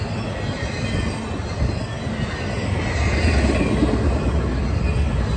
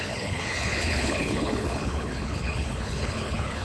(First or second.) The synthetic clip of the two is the second